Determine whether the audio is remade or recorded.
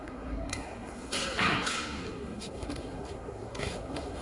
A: remade